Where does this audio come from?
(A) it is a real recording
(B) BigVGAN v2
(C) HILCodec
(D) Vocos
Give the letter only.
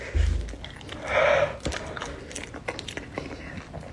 A